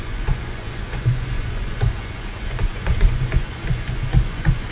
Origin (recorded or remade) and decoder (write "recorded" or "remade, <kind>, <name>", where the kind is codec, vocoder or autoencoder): remade, vocoder, Vocos